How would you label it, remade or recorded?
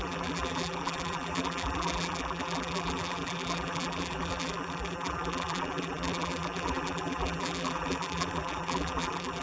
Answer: remade